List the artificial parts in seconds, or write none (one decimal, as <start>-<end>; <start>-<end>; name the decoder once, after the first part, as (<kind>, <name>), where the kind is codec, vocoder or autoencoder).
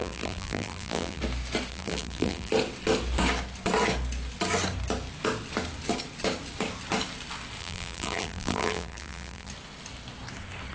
0.0-1.2 (vocoder, BigVGAN v2); 1.7-2.5; 7.6-9.5